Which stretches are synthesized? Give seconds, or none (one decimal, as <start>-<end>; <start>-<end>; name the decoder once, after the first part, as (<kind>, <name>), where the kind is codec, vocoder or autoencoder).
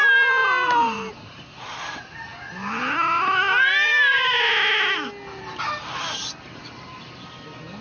none